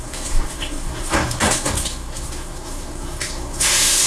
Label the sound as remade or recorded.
remade